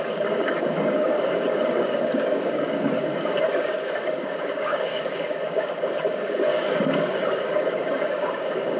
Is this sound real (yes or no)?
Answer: no